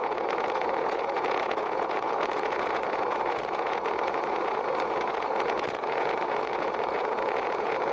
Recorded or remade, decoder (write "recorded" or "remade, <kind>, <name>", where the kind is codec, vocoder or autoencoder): remade, vocoder, Vocos